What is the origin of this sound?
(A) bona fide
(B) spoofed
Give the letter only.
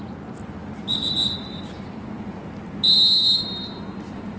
A